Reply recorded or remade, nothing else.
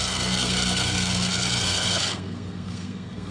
remade